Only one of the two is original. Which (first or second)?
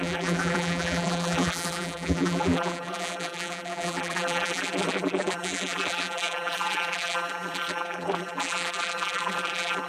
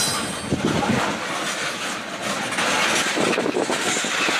second